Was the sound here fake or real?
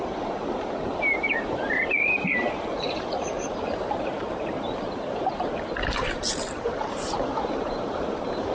fake